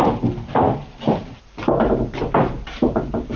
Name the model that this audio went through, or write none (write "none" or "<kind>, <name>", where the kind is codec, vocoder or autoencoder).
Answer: none